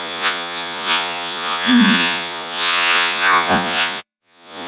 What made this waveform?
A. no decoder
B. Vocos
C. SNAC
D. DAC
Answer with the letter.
B